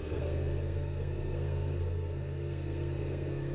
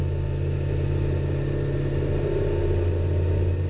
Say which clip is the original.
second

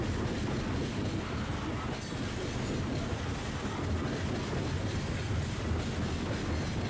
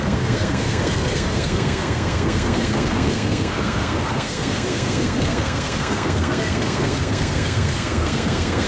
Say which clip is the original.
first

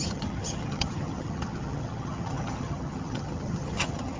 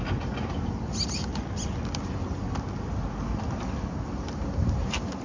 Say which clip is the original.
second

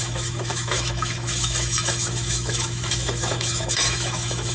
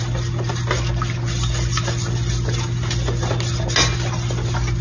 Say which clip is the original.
second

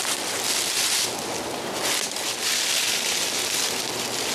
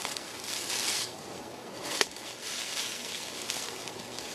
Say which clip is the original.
first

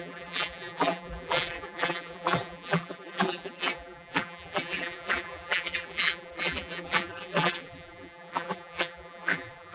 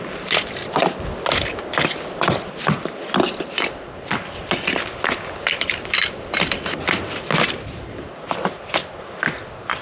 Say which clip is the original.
second